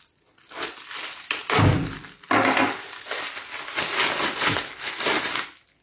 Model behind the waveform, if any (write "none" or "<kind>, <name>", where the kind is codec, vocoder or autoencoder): none